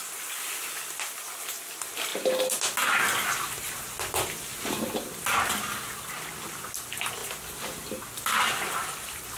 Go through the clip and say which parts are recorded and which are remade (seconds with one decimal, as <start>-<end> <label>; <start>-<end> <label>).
0.0-9.4 recorded